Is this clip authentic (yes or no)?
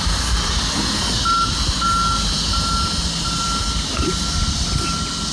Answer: yes